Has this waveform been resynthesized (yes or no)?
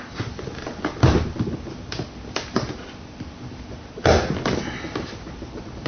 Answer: no